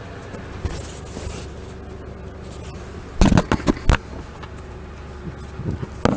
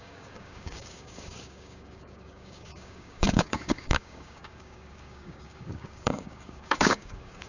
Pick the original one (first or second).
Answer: first